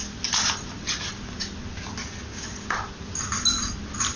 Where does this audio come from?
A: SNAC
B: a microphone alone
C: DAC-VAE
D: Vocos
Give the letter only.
B